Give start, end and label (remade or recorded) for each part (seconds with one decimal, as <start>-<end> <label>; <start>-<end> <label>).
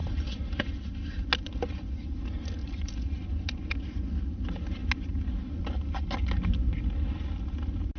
0.0-1.2 remade; 1.2-2.6 recorded; 2.6-3.2 remade; 3.2-8.0 recorded